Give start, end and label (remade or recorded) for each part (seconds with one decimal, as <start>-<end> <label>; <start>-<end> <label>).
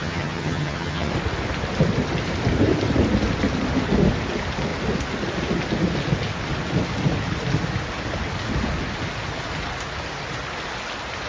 0.0-1.1 remade; 1.1-11.3 recorded